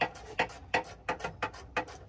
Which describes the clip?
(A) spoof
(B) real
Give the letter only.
B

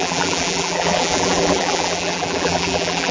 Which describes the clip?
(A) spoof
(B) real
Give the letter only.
A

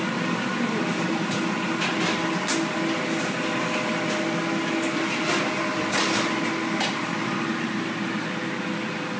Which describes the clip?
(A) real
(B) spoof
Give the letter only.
A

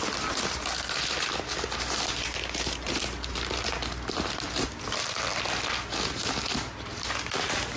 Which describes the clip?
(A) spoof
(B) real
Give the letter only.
B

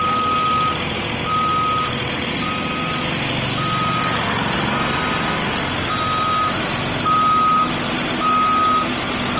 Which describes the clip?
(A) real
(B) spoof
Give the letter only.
A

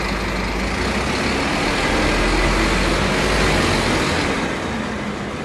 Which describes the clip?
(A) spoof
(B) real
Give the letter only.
B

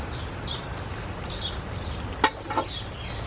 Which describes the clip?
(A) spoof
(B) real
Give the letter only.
B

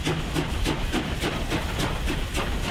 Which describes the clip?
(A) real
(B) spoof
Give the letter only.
A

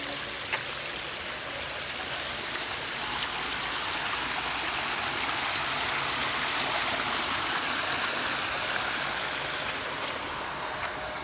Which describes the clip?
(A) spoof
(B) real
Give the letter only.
B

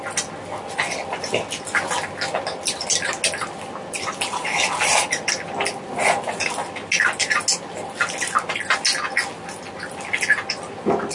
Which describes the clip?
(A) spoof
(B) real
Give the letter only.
B